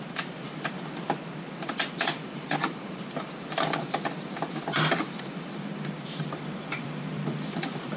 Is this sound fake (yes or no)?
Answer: yes